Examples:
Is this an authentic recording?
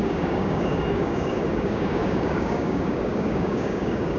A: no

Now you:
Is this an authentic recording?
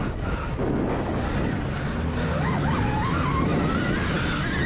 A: yes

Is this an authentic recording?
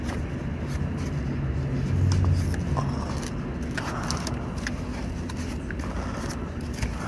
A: yes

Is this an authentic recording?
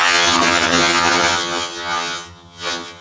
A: no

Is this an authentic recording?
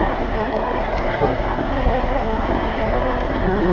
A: no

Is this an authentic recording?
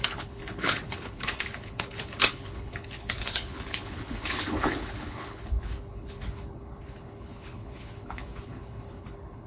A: no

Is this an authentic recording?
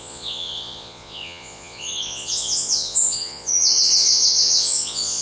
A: no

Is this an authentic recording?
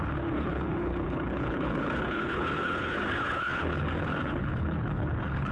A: no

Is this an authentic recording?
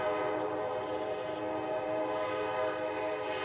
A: yes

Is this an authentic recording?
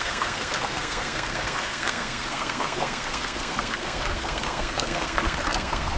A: no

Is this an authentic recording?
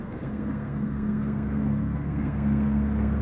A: no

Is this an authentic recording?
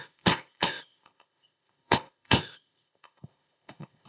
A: no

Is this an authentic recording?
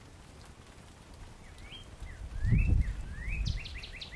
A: yes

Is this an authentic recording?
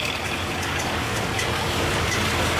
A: no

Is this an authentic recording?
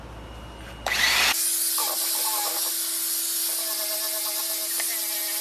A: yes